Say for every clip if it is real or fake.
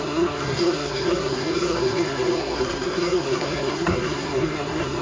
fake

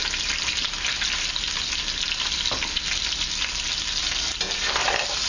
real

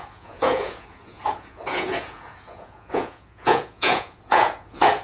fake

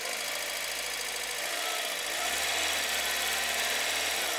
real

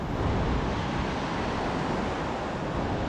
real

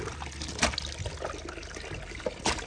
real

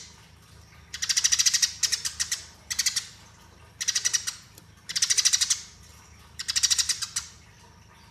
real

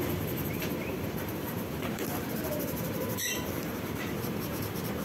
fake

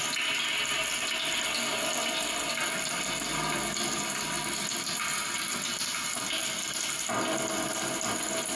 real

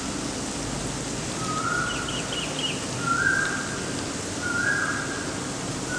real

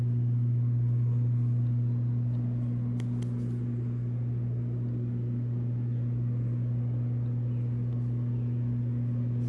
real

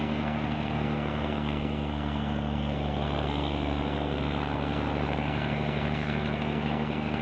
fake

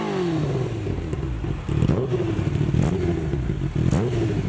real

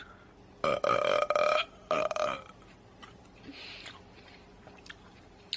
real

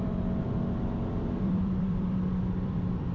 fake